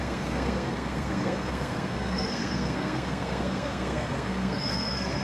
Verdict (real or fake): fake